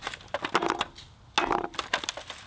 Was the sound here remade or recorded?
recorded